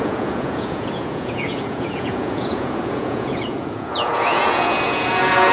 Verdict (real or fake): fake